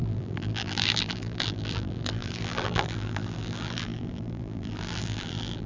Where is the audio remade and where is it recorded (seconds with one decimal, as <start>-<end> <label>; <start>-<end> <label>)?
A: 0.0-5.7 remade